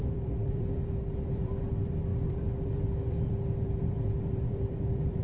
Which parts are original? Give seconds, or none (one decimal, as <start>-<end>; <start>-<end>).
none

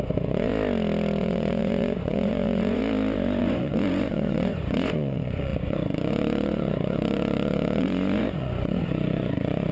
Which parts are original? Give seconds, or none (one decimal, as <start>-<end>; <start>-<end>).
0.5-1.2; 2.8-3.4

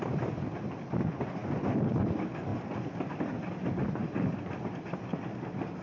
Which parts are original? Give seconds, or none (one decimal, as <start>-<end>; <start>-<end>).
0.0-5.8

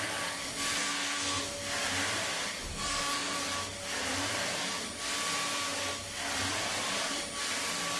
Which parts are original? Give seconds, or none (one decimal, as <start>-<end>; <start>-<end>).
0.0-0.8; 1.4-2.7; 3.4-8.0

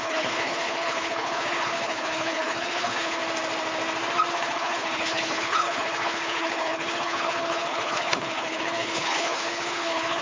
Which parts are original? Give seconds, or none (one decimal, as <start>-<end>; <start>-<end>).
3.2-4.3

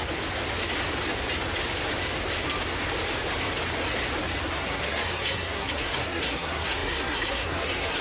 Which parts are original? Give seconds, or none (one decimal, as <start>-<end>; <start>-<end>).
0.0-4.5

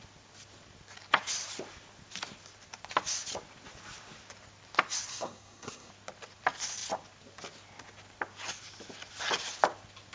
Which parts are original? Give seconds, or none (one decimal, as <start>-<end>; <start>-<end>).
0.0-5.1; 5.9-10.1

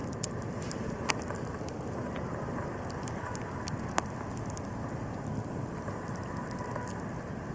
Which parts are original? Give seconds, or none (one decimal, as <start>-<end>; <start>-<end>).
4.0-7.5